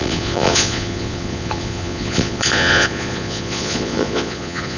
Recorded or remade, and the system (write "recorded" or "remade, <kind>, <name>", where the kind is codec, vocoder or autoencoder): remade, vocoder, Vocos